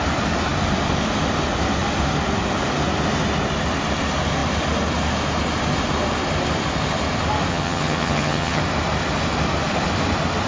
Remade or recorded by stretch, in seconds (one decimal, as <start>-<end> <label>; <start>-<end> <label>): 0.0-7.5 recorded; 7.5-8.6 remade; 8.6-10.5 recorded